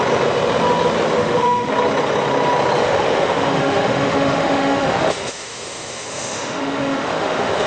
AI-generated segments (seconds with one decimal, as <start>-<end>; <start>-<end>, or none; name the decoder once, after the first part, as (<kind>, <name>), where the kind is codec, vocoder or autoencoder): 1.2-1.7 (autoencoder, DAC-VAE); 2.8-7.7